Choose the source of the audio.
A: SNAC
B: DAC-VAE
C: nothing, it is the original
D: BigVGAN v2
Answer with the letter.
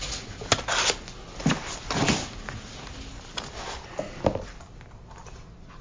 C